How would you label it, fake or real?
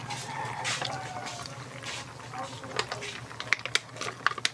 real